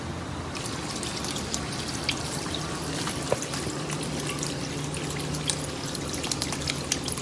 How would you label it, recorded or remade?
recorded